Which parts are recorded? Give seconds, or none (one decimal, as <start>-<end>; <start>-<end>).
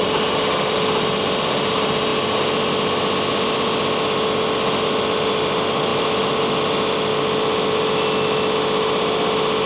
0.0-9.7